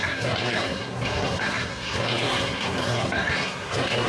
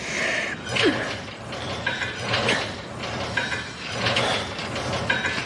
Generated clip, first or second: first